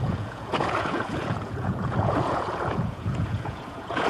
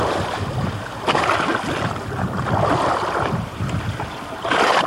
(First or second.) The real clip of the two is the second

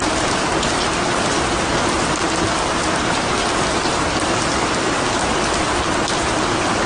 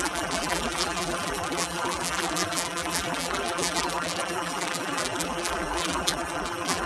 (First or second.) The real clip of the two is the first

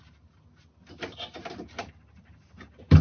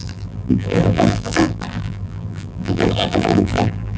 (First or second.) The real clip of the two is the first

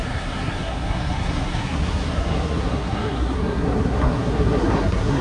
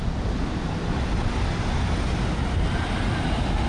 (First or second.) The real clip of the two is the second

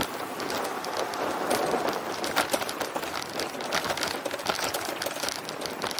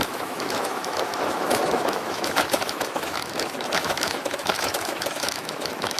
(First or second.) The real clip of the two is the first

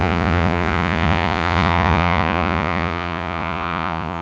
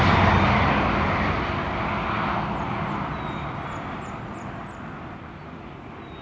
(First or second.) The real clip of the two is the second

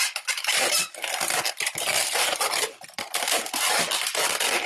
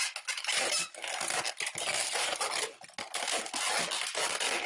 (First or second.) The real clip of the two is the second